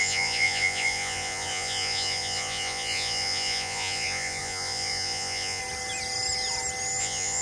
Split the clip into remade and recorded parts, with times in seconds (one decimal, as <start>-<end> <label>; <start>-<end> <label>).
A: 0.0-5.6 remade; 5.6-7.0 recorded; 7.0-7.4 remade